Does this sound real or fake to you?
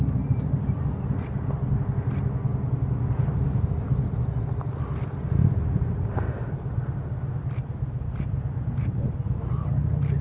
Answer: real